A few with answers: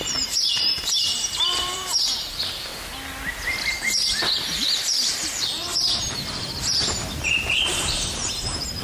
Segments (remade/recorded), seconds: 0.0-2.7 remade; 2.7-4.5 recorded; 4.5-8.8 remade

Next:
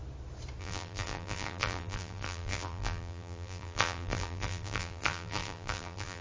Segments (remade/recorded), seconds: 0.0-0.6 recorded; 0.6-6.2 remade

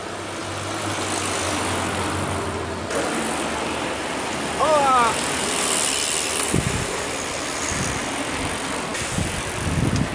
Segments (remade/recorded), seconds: 0.0-10.1 recorded

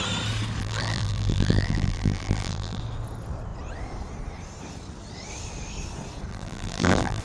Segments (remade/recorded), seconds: 0.0-0.6 recorded; 0.6-2.8 remade; 2.8-6.3 recorded; 6.3-7.2 remade

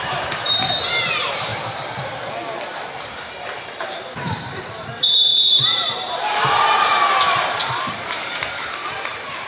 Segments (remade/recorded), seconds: 0.0-1.5 remade; 1.5-3.0 recorded; 3.0-9.5 remade